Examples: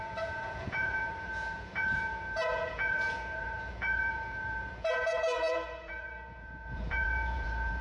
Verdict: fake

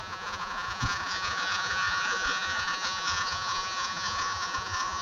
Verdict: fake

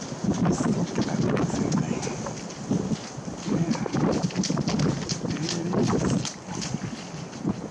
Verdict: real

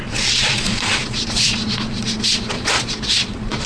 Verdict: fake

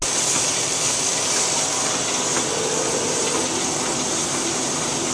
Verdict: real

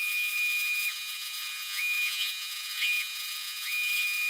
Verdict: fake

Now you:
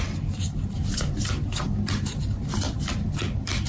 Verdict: real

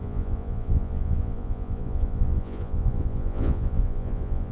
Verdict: fake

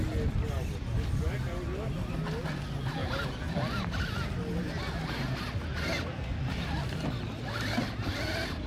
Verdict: real